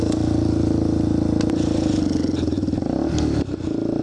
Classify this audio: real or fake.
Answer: real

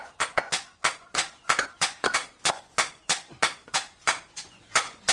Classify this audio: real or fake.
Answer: fake